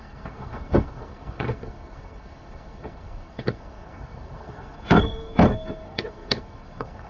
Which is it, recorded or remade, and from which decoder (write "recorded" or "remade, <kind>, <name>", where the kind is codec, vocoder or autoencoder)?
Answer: remade, codec, SNAC